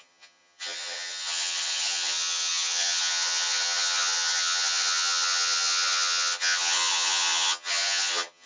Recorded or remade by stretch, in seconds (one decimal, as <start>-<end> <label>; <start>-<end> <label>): 0.0-8.5 remade